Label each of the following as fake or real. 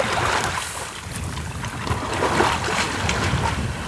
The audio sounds real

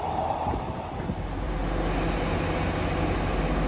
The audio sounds real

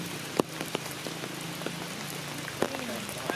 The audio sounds real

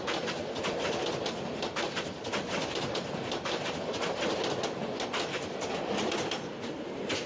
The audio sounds real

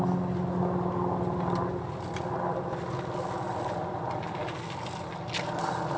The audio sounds real